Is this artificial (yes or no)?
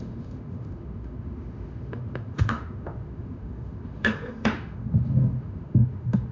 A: yes